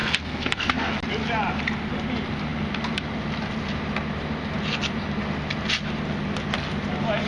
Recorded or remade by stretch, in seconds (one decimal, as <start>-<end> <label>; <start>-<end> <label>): 0.0-0.9 remade; 0.9-7.3 recorded